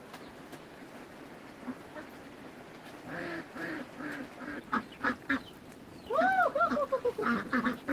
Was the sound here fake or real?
fake